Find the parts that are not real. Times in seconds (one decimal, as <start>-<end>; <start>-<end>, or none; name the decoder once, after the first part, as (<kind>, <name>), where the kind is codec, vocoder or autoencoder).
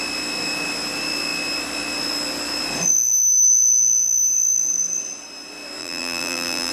5.8-6.7 (vocoder, BigVGAN v2)